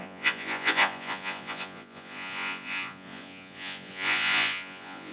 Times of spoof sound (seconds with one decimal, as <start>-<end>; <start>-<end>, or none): 0.0-5.1